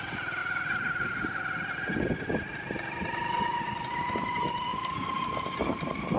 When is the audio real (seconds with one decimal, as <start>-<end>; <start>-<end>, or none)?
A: 0.0-6.2